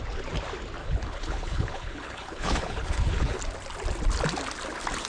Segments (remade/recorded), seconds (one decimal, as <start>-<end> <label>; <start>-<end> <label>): 0.0-0.8 recorded; 0.8-3.4 remade; 3.4-5.1 recorded